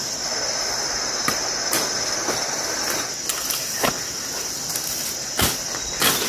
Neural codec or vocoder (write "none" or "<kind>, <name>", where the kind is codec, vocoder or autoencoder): none